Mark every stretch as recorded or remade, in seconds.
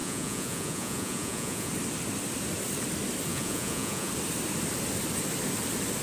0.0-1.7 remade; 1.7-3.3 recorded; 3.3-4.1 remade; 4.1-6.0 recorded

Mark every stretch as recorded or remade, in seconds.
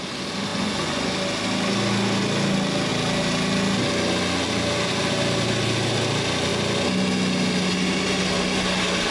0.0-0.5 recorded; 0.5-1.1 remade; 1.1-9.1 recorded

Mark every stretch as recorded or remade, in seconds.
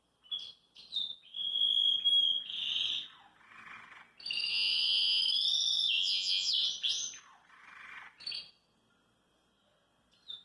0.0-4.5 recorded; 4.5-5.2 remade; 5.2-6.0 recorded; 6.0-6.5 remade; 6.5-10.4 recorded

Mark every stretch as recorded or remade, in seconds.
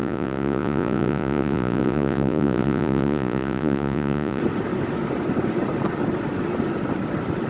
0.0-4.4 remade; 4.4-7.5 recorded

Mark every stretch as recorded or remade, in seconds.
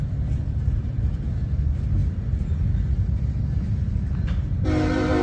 0.0-5.2 recorded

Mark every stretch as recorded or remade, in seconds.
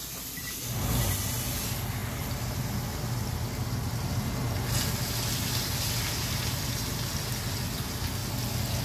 0.0-8.8 recorded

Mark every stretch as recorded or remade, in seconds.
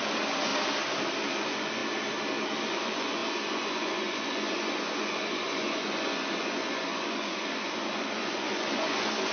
0.0-0.5 remade; 0.5-1.3 recorded; 1.3-1.8 remade; 1.8-2.6 recorded; 2.6-9.3 remade